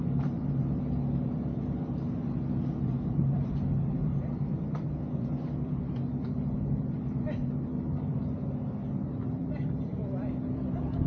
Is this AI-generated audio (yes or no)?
yes